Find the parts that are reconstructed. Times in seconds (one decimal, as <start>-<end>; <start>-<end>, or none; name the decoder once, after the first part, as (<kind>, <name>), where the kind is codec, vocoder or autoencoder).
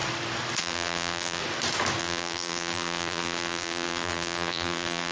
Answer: 0.6-1.4 (vocoder, BigVGAN v2); 2.0-5.1